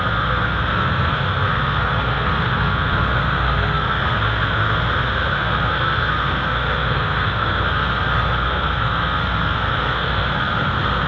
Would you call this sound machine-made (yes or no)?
yes